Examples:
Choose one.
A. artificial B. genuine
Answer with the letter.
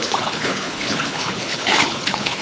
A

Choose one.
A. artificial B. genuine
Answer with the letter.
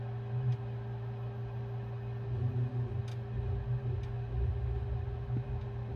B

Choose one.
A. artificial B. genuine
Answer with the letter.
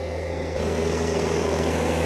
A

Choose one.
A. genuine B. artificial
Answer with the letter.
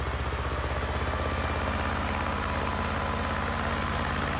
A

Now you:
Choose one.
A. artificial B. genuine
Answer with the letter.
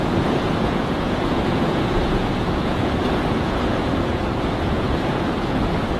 A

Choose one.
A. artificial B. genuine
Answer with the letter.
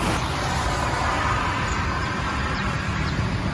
B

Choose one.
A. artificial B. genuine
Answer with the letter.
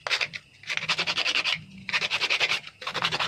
B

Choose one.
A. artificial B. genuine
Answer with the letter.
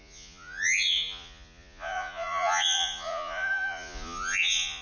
A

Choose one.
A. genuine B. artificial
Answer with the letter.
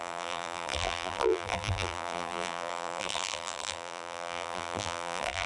B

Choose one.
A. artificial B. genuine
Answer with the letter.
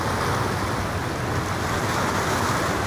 B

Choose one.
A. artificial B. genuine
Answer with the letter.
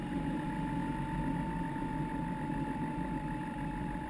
A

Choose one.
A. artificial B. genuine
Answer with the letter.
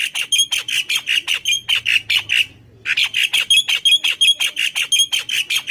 B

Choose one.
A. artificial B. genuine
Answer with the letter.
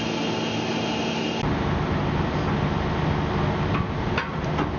B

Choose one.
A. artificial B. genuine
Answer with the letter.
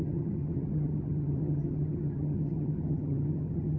A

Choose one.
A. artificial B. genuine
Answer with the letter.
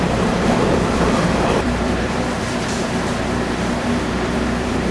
A